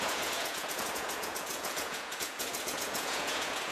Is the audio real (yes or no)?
no